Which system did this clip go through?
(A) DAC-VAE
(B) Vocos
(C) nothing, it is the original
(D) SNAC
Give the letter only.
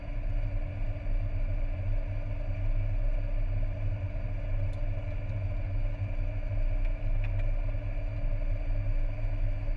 C